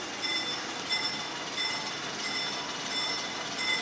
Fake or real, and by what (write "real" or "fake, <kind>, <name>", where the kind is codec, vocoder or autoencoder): real